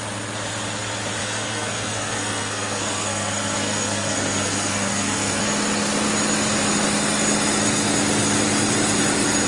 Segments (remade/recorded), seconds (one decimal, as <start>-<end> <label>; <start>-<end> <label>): 0.0-1.2 recorded; 1.2-5.4 remade; 5.4-9.5 recorded